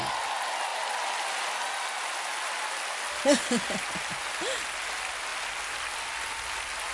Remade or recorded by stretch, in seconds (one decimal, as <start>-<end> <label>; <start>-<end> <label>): 0.0-6.9 recorded